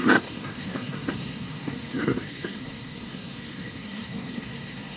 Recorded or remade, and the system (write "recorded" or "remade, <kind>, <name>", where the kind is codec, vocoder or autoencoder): remade, codec, SNAC